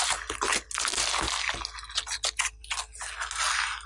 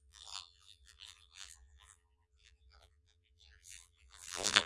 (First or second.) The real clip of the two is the first